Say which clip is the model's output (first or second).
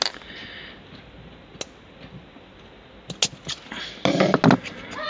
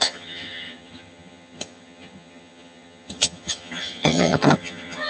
second